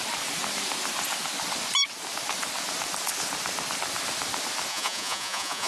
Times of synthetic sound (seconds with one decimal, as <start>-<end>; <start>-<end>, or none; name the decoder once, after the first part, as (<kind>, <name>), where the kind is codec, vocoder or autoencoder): 4.7-5.7 (vocoder, Vocos)